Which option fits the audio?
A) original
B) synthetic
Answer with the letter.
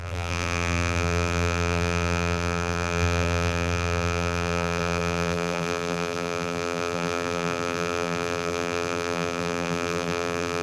B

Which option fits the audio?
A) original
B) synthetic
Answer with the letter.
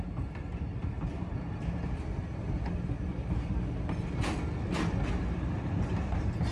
A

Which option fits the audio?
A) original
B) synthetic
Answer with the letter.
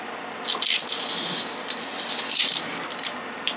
A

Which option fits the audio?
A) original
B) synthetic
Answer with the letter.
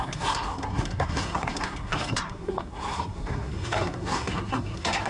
B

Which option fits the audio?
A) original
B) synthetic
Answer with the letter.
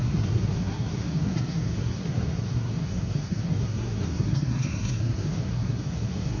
B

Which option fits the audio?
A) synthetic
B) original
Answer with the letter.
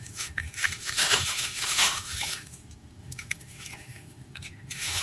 A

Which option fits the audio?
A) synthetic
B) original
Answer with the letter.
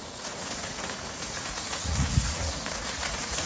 A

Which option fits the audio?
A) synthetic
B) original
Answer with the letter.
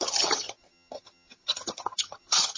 A